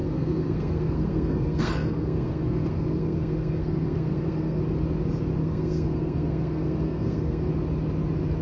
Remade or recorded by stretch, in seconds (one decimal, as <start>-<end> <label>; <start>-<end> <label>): 0.0-4.6 remade; 4.6-5.4 recorded; 5.4-7.5 remade; 7.5-8.4 recorded